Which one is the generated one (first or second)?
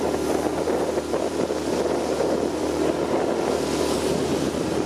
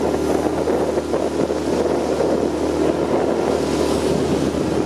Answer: first